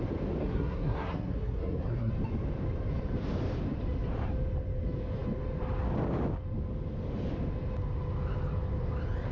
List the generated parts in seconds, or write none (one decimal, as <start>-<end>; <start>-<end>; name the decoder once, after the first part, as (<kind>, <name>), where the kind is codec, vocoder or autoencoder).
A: 0.4-2.1 (codec, SNAC)